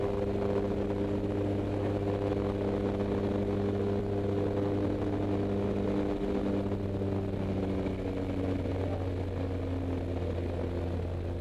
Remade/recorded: recorded